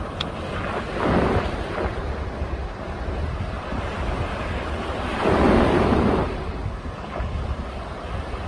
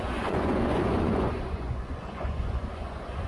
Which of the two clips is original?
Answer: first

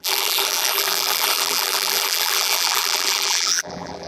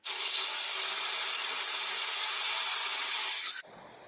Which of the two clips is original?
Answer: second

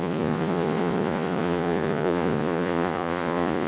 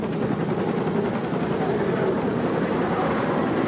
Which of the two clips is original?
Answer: second